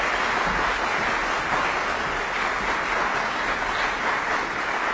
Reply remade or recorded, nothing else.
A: recorded